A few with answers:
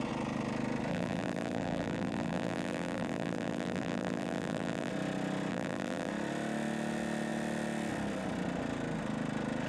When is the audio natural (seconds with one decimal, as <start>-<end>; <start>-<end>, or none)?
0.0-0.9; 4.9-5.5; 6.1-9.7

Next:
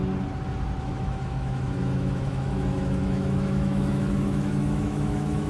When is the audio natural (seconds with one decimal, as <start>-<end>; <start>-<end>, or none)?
0.0-0.8

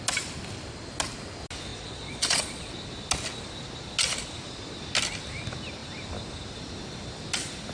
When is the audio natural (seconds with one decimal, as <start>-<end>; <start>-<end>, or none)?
0.0-1.7; 2.7-7.7